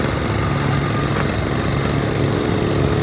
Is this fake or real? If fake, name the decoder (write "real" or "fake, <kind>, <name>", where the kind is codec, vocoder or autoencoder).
real